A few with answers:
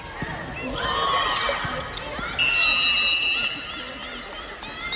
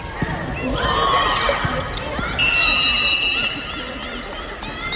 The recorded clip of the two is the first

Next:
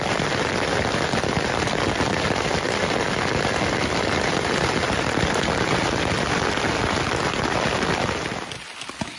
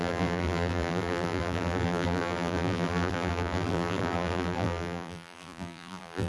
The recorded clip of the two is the first